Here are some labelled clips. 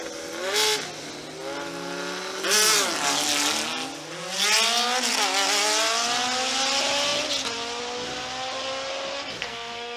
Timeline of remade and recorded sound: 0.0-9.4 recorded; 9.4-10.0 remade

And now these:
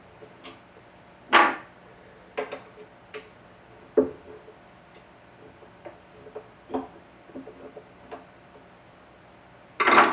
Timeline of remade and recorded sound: 0.0-10.1 recorded

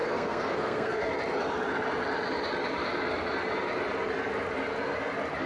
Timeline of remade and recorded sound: 0.0-1.1 remade; 1.1-5.5 recorded

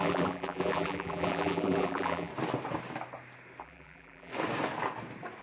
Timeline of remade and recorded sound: 0.0-2.3 remade; 2.3-3.6 recorded; 3.6-4.3 remade; 4.3-5.4 recorded

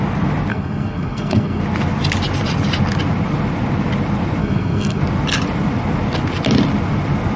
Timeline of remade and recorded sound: 0.0-0.5 recorded; 0.5-1.6 remade; 1.6-4.4 recorded; 4.4-5.0 remade; 5.0-7.4 recorded

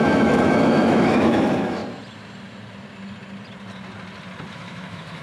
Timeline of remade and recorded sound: 0.0-1.8 remade; 1.8-4.5 recorded; 4.5-5.2 remade

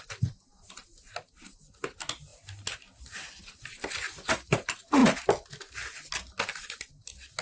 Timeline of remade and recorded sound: 0.0-7.4 recorded

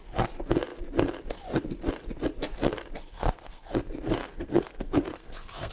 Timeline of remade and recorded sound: 0.0-3.1 recorded; 3.1-3.7 remade; 3.7-4.2 recorded; 4.2-5.7 remade